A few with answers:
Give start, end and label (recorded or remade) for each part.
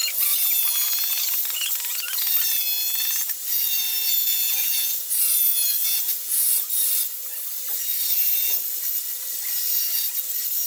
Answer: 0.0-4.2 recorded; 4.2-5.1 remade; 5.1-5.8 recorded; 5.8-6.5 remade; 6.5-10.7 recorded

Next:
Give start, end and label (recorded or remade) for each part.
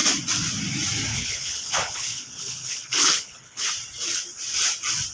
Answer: 0.0-1.1 recorded; 1.1-3.7 remade; 3.7-5.1 recorded